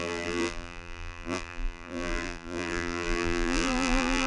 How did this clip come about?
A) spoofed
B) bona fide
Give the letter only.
A